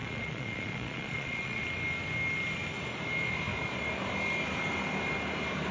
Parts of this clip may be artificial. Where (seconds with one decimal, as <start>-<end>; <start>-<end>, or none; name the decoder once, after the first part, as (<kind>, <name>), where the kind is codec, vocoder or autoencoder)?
0.0-1.6 (vocoder, Vocos)